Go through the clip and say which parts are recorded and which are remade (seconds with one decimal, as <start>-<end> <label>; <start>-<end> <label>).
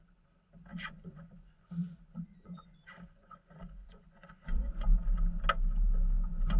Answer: 0.0-0.7 recorded; 0.7-4.7 remade; 4.7-6.6 recorded